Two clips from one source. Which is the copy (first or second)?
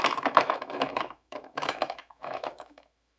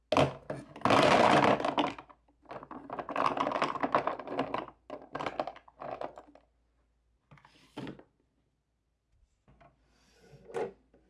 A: first